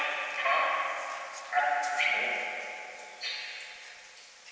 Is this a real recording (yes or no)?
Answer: yes